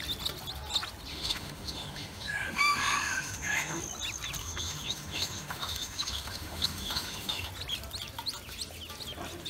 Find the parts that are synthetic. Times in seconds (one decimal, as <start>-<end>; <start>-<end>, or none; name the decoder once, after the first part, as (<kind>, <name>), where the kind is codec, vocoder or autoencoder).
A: 1.1-3.8 (autoencoder, DAC-VAE); 4.4-7.5